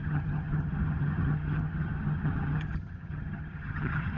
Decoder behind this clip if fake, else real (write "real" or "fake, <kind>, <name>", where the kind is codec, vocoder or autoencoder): fake, vocoder, HiFi-GAN